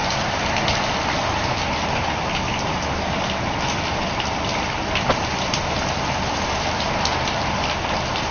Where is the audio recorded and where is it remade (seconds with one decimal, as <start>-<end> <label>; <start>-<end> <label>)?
0.0-2.2 recorded; 2.2-8.3 remade